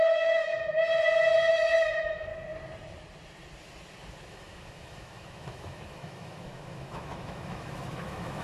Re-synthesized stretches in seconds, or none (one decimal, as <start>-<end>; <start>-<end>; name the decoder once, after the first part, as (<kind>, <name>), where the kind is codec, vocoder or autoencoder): 0.0-0.5 (autoencoder, DAC-VAE); 1.5-2.3; 4.3-8.4